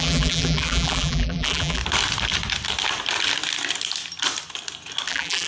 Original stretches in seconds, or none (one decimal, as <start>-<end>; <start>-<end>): 1.8-5.1